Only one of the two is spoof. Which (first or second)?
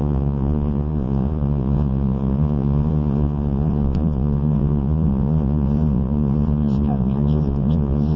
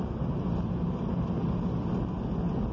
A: first